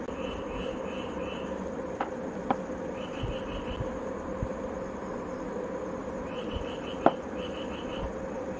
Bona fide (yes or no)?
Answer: yes